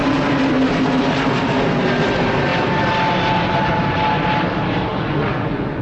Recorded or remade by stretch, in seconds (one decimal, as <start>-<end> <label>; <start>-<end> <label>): 0.0-4.9 recorded; 4.9-5.8 remade